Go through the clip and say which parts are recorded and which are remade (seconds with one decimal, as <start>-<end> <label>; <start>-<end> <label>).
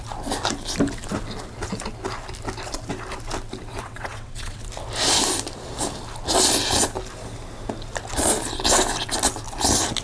0.0-3.7 recorded; 3.7-4.6 remade; 4.6-10.0 recorded